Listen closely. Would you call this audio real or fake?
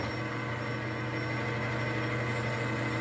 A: real